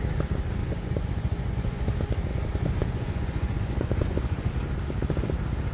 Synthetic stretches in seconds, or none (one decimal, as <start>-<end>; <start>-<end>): 0.6-1.9; 2.3-4.5

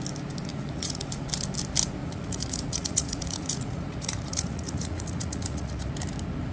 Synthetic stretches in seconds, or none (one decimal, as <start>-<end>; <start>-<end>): 0.5-1.3; 2.0-5.9

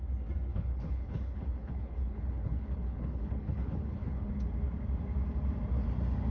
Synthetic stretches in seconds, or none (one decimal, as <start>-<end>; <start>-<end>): 0.5-4.3